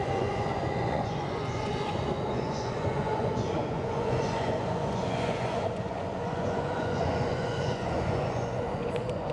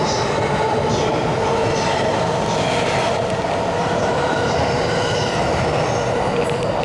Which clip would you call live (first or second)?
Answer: second